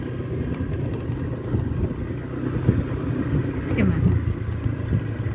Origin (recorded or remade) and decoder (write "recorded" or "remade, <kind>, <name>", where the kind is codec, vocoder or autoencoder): recorded